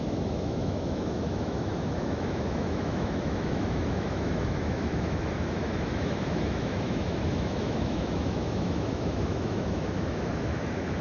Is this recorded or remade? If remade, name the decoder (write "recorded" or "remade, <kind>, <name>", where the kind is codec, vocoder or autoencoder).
remade, autoencoder, DAC-VAE